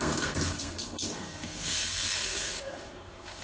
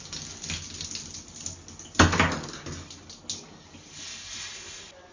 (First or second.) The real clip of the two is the second